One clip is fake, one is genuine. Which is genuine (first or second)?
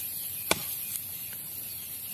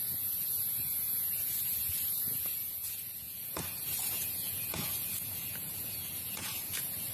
first